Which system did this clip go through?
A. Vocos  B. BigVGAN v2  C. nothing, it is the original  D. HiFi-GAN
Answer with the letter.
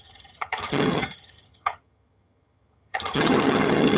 D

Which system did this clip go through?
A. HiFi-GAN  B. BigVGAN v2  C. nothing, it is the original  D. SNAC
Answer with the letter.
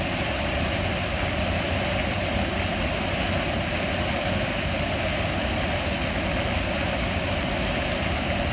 C